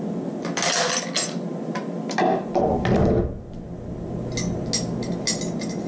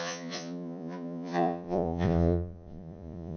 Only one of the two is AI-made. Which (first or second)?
second